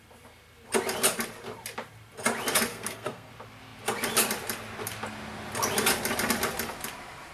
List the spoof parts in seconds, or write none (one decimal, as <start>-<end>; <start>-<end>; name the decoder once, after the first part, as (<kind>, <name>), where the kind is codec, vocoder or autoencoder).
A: 2.7-3.3 (codec, SNAC)